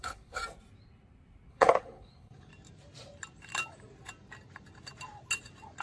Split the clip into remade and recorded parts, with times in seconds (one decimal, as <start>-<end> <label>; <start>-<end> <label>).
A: 0.0-0.4 remade; 0.4-1.5 recorded; 1.5-2.5 remade; 2.5-5.8 recorded